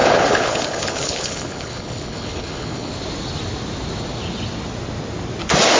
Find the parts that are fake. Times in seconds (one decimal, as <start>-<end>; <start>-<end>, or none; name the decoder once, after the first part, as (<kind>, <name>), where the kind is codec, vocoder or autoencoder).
0.0-2.9 (codec, HILCodec)